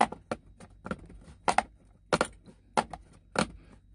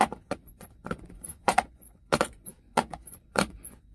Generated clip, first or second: second